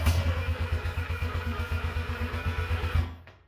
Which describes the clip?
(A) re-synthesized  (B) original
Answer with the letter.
A